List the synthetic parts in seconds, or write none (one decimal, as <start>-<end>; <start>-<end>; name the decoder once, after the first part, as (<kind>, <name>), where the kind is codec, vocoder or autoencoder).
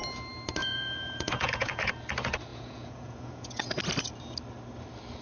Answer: 0.6-1.9 (vocoder, Vocos); 2.5-3.7